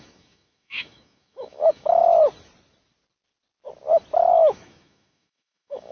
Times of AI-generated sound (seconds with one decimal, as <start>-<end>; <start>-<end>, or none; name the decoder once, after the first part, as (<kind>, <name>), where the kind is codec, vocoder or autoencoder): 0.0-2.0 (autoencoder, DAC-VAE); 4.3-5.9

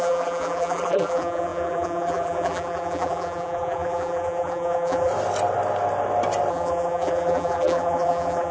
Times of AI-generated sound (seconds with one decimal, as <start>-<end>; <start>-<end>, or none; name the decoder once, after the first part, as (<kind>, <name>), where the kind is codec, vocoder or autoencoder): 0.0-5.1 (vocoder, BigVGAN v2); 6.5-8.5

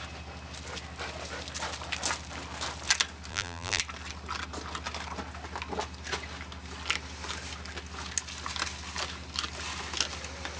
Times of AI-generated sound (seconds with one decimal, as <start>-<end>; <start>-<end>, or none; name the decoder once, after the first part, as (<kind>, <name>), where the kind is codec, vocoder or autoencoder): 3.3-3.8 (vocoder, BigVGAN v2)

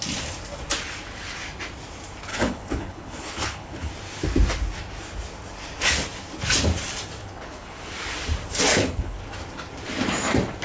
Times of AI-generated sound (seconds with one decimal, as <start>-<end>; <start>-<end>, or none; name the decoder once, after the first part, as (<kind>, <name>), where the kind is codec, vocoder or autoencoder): 2.3-3.9 (codec, HILCodec); 7.2-7.9; 8.7-9.2